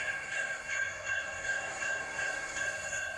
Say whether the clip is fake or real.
fake